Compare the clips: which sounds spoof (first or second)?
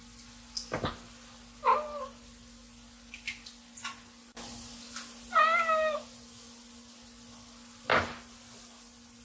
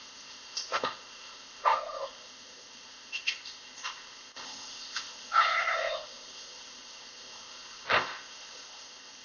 second